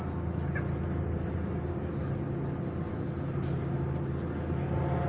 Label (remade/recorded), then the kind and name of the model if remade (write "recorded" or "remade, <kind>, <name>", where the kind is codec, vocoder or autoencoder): recorded